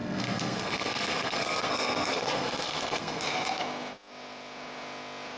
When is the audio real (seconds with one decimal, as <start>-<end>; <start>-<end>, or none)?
3.2-5.4